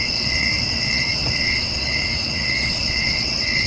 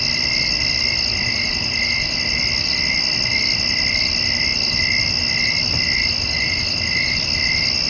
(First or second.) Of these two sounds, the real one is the second